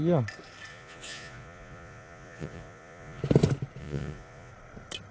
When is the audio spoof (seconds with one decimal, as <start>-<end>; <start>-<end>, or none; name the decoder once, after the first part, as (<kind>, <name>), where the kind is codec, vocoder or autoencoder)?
0.7-3.2 (vocoder, Vocos); 3.8-4.5